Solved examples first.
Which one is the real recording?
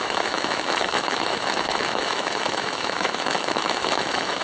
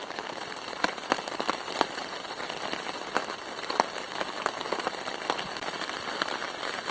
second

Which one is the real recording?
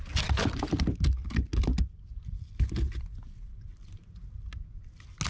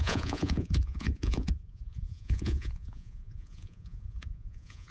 first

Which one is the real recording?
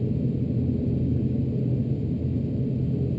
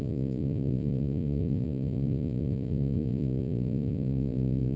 first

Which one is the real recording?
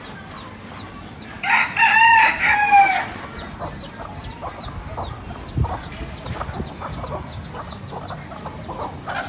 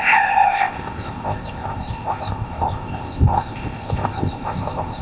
first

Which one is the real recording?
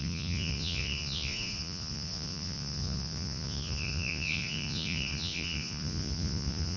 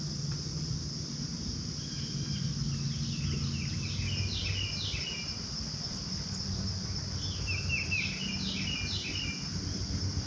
second